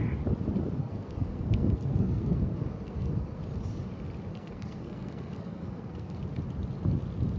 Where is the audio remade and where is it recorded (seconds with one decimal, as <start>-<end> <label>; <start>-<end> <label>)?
0.0-0.8 recorded; 0.8-3.4 remade; 3.4-4.3 recorded; 4.3-6.2 remade; 6.2-7.4 recorded